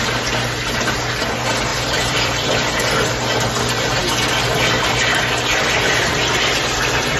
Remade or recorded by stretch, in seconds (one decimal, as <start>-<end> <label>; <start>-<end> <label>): 0.0-1.7 recorded; 1.7-2.5 remade; 2.5-7.2 recorded